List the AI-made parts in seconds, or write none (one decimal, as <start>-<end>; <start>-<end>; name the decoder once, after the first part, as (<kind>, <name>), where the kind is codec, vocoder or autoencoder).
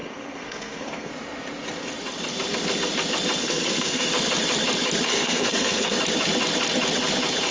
0.0-1.1 (codec, SNAC); 3.4-4.1; 5.1-6.0